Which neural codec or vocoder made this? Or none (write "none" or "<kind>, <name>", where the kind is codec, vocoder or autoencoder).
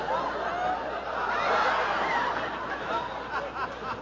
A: none